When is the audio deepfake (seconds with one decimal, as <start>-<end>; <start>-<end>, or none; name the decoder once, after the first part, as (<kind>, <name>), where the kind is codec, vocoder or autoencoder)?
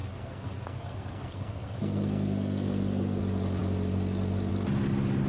0.0-3.2 (codec, SNAC)